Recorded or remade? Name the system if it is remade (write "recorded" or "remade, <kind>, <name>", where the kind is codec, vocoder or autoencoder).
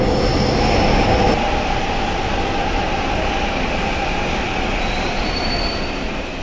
recorded